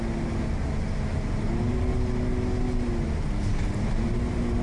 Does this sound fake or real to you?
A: real